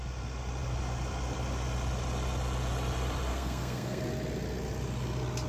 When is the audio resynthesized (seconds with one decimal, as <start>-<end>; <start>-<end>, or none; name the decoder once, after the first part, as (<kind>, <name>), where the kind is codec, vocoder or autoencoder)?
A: 3.3-4.0 (codec, SNAC)